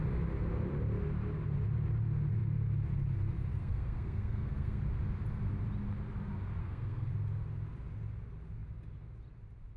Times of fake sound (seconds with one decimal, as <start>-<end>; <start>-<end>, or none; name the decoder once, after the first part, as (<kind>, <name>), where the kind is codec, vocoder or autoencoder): 3.6-4.8 (codec, SNAC); 6.6-7.1